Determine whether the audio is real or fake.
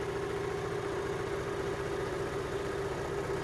real